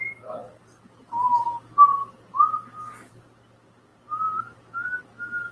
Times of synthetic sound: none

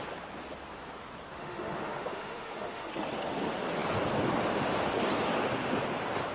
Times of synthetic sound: 1.4-2.9 (autoencoder, DAC-VAE)

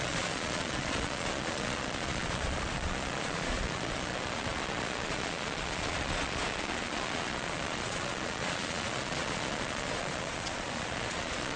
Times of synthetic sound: 0.0-11.6 (vocoder, Vocos)